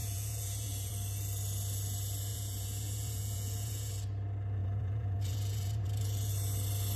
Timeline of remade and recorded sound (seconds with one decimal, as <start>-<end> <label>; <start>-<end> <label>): 0.0-0.9 remade; 0.9-2.3 recorded; 2.3-3.9 remade; 3.9-4.6 recorded; 4.6-6.3 remade; 6.3-7.0 recorded